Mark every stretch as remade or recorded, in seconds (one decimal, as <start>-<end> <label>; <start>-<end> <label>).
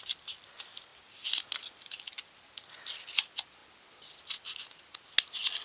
0.0-5.6 recorded